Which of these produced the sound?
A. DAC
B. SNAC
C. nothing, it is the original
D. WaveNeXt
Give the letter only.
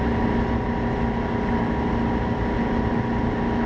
C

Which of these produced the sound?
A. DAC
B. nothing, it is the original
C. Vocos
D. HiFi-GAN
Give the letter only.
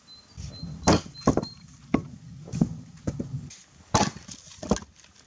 B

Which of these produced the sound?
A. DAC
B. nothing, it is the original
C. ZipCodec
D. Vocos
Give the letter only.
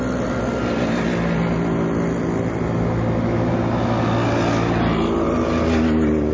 B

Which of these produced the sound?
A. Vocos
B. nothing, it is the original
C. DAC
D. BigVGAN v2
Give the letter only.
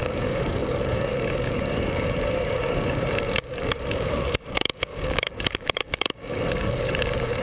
C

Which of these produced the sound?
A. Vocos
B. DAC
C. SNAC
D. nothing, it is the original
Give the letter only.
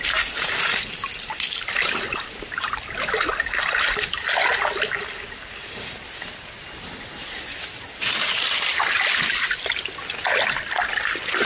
D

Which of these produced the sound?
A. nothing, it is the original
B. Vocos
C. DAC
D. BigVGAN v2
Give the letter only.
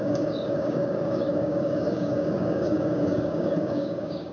C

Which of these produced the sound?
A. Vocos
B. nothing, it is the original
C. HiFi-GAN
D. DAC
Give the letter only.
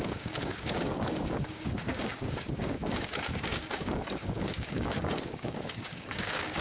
D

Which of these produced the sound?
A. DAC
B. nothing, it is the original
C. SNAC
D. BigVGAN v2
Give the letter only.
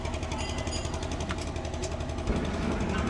B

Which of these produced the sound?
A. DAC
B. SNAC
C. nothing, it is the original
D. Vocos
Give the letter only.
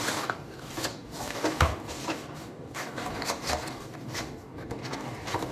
A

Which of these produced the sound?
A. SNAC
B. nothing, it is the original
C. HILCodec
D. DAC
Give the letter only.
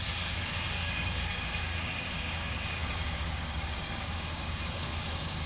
D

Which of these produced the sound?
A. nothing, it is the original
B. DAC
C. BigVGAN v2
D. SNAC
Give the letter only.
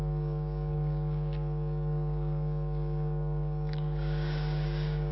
B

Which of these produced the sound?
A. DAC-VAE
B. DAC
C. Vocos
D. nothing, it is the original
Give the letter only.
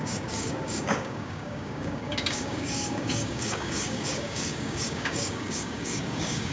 B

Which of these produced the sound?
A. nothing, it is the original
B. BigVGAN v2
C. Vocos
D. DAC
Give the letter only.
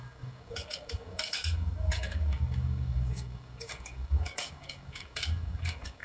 D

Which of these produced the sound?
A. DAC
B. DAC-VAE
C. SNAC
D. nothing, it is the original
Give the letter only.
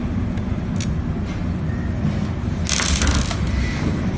D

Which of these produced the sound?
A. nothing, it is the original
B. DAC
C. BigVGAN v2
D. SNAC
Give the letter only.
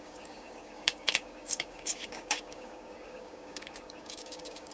B